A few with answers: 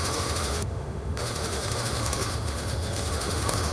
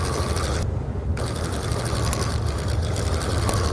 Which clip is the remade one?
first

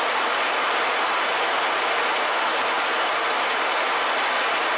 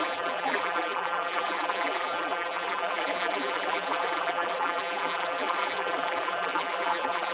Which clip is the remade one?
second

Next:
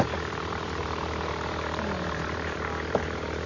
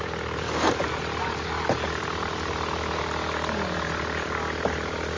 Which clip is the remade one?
first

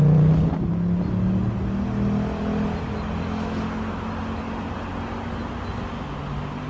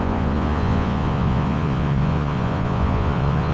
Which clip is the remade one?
second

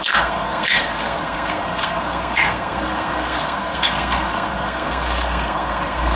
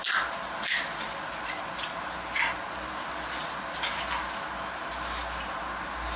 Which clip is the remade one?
first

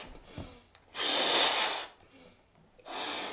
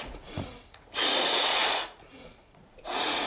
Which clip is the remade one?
second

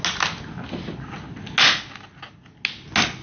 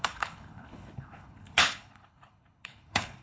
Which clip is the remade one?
second